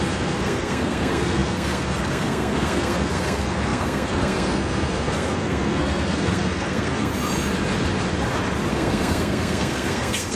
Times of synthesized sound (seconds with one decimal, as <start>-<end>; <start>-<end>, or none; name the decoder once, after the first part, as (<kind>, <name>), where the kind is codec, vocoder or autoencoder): 0.0-7.1 (codec, SNAC); 8.7-10.4